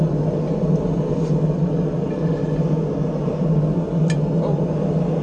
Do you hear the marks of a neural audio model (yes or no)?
no